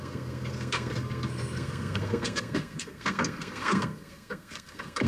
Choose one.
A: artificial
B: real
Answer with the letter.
A